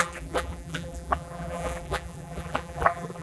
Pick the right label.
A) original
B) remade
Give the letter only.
B